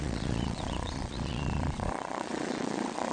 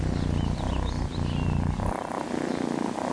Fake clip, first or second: first